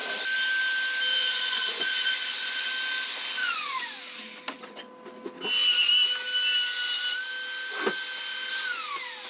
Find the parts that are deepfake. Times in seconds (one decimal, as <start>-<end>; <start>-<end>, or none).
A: 1.1-2.7; 3.4-4.0